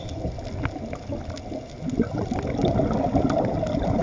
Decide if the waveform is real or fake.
real